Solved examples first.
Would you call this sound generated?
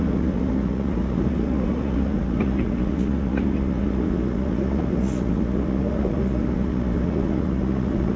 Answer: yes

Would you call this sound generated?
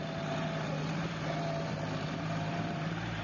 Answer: yes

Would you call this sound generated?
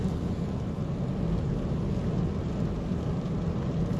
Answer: no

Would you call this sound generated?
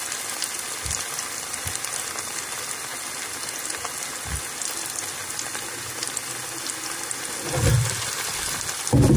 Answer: no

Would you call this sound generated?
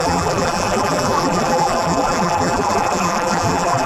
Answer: yes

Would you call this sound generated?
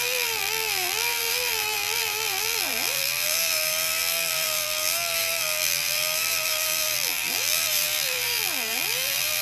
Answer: yes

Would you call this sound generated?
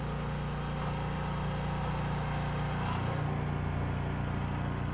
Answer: no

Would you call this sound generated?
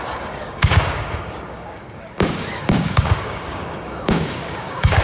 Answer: yes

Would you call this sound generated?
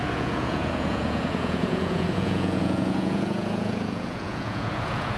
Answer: yes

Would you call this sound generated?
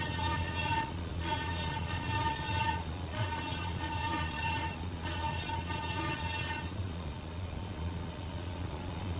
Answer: yes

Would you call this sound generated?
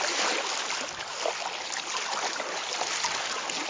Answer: no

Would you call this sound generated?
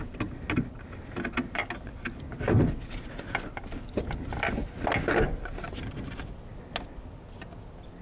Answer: no